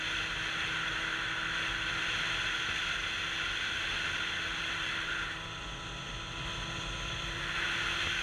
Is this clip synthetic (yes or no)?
no